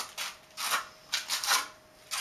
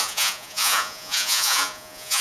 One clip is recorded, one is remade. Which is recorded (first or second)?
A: first